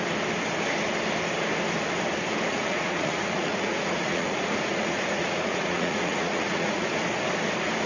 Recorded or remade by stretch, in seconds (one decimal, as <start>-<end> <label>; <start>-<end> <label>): 0.0-2.5 recorded; 2.5-6.9 remade; 6.9-7.9 recorded

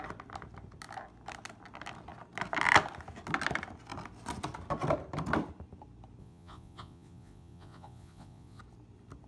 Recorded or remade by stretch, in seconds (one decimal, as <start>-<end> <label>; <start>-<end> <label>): 0.0-6.2 recorded; 6.2-8.6 remade; 8.6-9.3 recorded

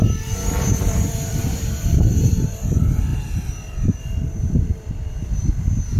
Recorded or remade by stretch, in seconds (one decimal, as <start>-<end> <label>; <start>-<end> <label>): 0.0-0.8 recorded; 0.8-6.0 remade

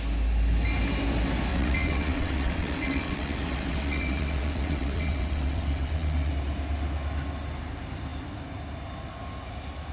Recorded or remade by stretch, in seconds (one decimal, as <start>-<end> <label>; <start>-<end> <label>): 0.0-1.5 recorded; 1.5-6.3 remade; 6.3-9.9 recorded